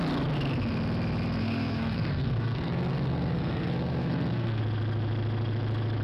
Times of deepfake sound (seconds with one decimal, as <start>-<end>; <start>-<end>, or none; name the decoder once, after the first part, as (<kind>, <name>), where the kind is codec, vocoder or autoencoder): 1.4-4.6 (codec, SNAC)